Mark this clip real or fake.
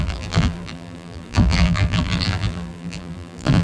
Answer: fake